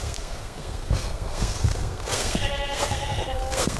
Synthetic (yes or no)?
yes